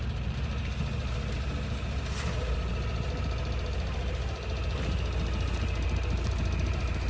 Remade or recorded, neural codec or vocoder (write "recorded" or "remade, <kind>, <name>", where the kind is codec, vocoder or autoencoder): recorded